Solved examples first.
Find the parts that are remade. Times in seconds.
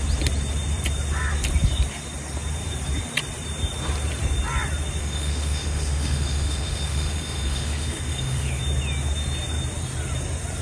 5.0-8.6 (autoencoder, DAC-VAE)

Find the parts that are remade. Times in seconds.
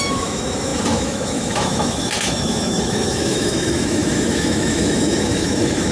0.0-5.9 (autoencoder, DAC-VAE)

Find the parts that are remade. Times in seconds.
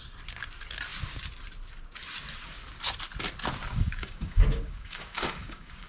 3.7-5.9 (codec, DAC)